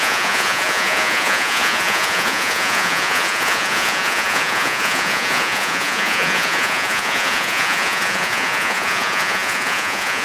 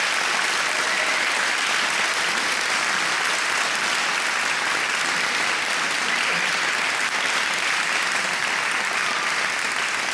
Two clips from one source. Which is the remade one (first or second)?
first